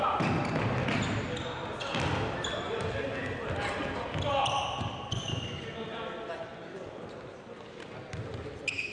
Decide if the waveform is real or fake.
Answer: real